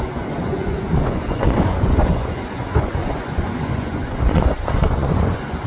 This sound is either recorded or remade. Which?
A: remade